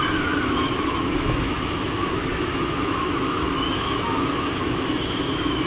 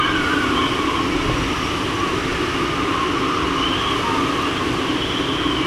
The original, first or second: second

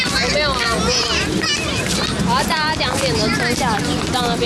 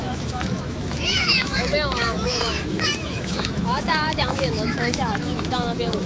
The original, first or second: first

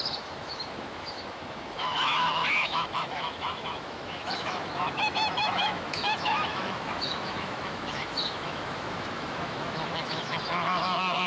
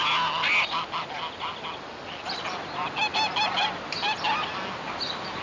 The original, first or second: second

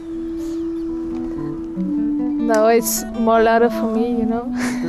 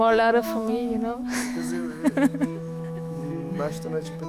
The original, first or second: first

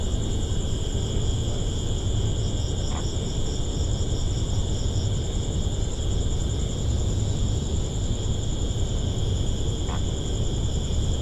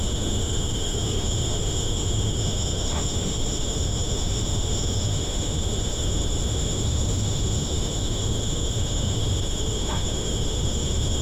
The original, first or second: first